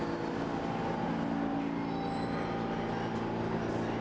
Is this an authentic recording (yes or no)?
yes